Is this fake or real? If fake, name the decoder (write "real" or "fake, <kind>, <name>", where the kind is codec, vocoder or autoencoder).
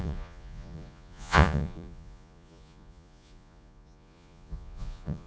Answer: fake, vocoder, Vocos